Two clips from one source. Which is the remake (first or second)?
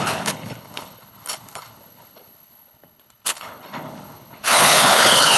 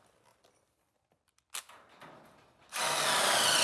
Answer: first